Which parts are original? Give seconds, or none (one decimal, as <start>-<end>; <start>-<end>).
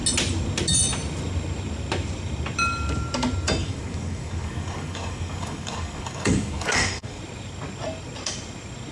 0.0-3.6; 7.2-8.9